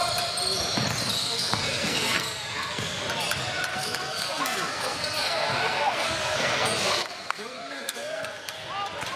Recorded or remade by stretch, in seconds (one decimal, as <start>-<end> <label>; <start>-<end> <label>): 0.0-1.2 recorded; 1.2-3.0 remade; 3.0-3.7 recorded; 3.7-8.7 remade; 8.7-9.2 recorded